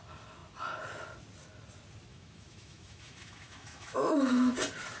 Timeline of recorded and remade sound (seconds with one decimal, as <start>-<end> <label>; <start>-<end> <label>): 0.0-2.1 recorded; 2.1-4.5 remade; 4.5-5.0 recorded